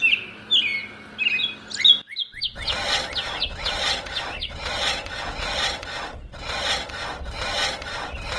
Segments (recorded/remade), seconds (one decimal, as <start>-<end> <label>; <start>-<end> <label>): 0.0-3.2 recorded; 3.2-6.9 remade; 6.9-8.4 recorded